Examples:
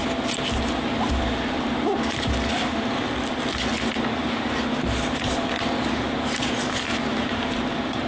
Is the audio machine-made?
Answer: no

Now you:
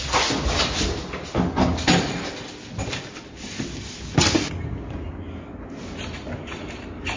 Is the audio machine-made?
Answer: no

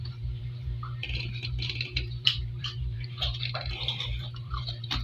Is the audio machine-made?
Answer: yes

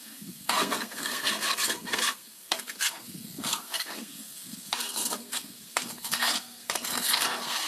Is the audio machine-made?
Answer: yes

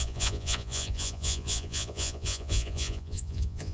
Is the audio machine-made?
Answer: yes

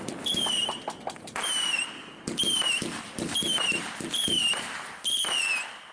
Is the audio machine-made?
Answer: no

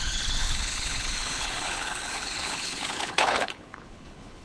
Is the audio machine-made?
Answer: yes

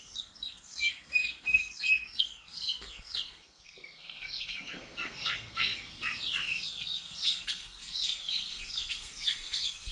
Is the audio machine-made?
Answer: yes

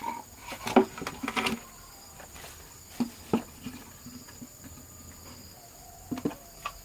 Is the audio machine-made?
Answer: no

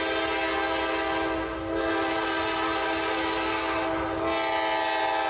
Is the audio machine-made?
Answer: no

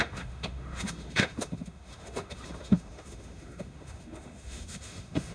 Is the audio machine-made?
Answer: yes